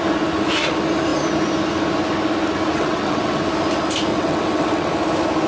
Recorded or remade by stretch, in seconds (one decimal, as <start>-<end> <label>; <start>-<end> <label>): 0.0-2.7 recorded; 2.7-3.4 remade; 3.4-4.1 recorded; 4.1-4.9 remade; 4.9-5.5 recorded